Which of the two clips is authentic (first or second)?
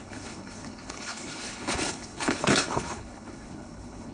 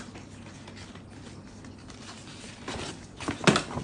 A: second